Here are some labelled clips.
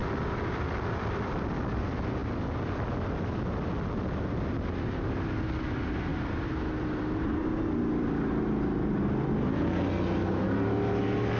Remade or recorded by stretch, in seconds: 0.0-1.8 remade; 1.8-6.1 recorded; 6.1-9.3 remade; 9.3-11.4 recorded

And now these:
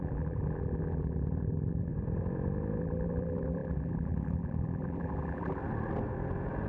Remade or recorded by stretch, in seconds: 0.0-1.9 remade; 1.9-2.8 recorded; 2.8-5.6 remade; 5.6-6.7 recorded

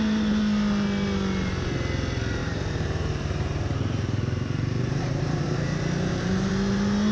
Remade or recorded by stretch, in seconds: 0.0-2.4 recorded; 2.4-6.5 remade; 6.5-7.1 recorded

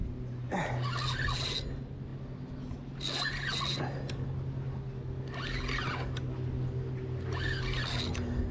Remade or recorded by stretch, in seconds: 0.0-8.5 recorded

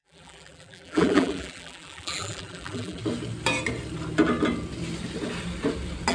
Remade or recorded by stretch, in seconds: 0.0-3.0 remade; 3.0-6.1 recorded